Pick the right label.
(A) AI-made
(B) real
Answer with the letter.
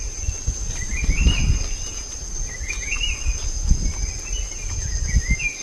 B